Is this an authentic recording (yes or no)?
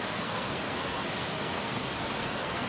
no